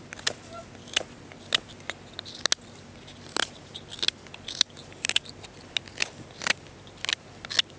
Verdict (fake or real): real